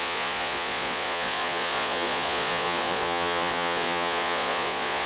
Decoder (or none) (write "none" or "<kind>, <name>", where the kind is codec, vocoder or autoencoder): vocoder, Vocos